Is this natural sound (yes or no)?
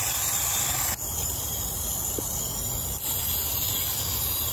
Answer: yes